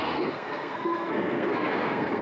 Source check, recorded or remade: remade